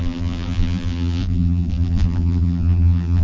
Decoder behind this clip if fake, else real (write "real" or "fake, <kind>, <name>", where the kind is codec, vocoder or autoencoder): fake, vocoder, BigVGAN v2